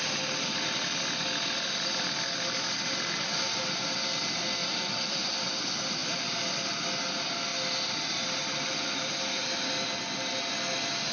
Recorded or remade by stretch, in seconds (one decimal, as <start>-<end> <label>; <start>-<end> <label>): 0.0-4.6 recorded; 4.6-5.4 remade; 5.4-6.0 recorded; 6.0-6.7 remade; 6.7-11.1 recorded